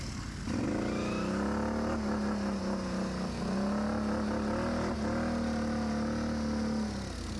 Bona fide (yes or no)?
yes